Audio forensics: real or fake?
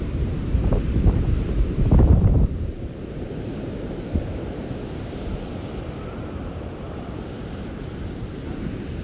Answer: fake